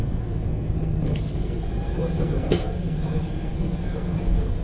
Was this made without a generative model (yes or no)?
no